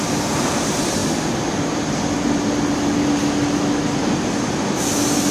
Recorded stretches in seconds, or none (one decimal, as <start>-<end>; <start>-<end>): 0.0-5.3